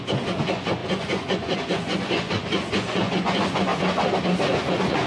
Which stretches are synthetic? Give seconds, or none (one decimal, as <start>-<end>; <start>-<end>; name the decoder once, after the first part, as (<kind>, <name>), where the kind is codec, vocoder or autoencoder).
0.0-3.7 (vocoder, Vocos); 4.5-5.1